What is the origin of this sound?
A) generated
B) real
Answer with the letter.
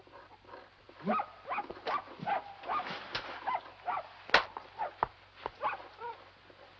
B